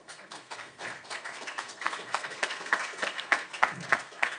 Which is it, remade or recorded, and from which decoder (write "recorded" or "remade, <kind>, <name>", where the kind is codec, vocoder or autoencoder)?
remade, codec, SNAC